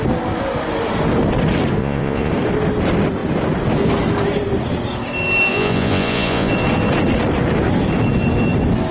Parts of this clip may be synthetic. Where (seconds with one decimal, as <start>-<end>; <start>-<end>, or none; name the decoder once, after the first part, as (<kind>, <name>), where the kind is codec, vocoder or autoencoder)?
1.8-2.3 (vocoder, Vocos); 5.5-6.5